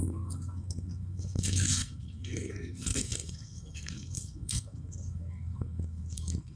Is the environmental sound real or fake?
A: fake